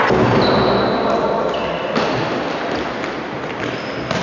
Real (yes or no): yes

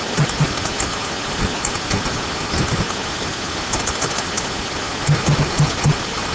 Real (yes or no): yes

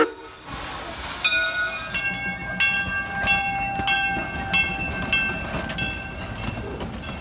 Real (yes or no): yes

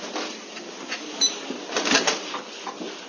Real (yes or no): yes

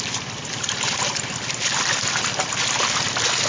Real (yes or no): yes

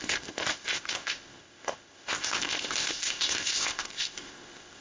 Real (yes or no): no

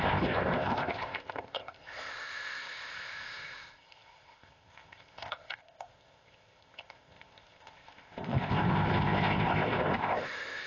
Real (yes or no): no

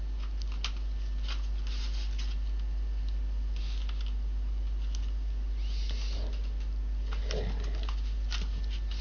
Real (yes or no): yes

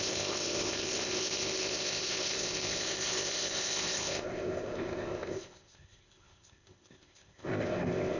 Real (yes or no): no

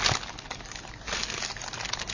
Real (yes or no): yes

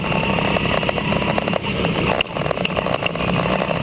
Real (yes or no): yes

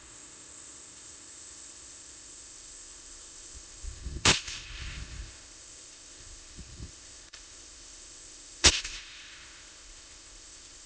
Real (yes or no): no